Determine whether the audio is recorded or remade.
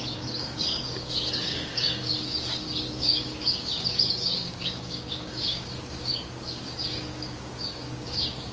remade